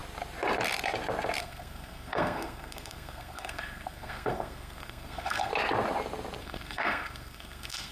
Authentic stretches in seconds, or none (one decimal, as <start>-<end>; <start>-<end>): 0.0-1.4; 5.5-6.4